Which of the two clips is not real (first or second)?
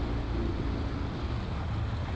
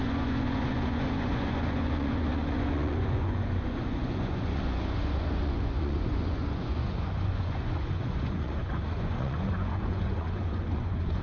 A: second